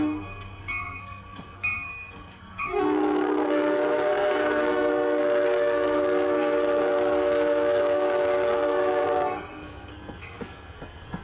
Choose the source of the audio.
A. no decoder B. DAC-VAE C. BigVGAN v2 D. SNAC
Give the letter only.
D